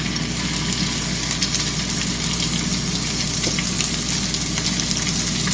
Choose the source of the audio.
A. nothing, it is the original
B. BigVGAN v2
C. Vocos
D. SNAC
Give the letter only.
A